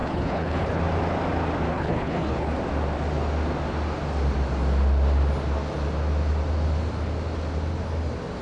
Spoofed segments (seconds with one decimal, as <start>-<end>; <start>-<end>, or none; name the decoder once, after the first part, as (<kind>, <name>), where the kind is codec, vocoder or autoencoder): 0.0-0.8 (codec, HILCodec); 1.7-2.5